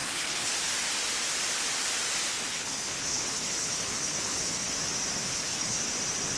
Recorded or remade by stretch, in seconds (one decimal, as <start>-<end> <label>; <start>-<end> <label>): 0.0-0.5 remade; 0.5-2.4 recorded; 2.4-4.7 remade; 4.7-5.2 recorded; 5.2-5.8 remade; 5.8-6.4 recorded